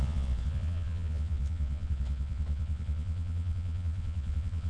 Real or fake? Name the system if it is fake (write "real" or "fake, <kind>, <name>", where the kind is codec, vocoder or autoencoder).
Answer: fake, vocoder, Vocos